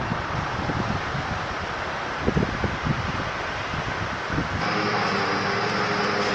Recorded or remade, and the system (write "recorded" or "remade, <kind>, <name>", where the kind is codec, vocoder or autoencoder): recorded